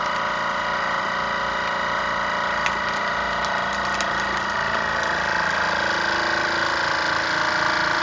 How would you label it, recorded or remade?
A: recorded